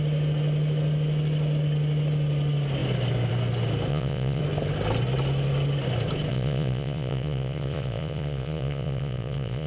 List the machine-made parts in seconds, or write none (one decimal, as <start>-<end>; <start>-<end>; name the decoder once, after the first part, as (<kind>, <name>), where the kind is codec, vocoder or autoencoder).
3.9-4.4 (vocoder, Vocos); 6.3-9.7

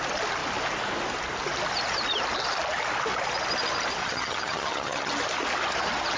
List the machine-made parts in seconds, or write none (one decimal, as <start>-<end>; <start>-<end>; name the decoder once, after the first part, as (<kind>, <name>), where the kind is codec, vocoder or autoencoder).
4.0-5.1 (vocoder, HiFi-GAN)

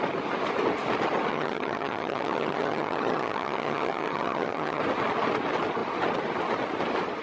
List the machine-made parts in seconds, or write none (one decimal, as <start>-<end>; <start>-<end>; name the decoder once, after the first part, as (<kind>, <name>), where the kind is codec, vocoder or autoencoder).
1.3-4.8 (vocoder, HiFi-GAN)

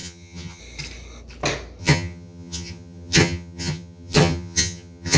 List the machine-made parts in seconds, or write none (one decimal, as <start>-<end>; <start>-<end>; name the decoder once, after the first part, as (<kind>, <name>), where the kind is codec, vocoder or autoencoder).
0.0-0.6 (vocoder, HiFi-GAN); 1.8-5.2

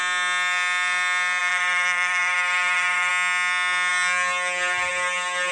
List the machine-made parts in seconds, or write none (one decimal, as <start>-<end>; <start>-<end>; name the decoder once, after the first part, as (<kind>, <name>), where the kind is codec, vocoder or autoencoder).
1.4-3.1 (vocoder, BigVGAN v2)